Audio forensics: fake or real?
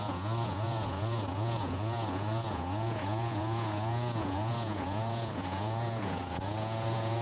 fake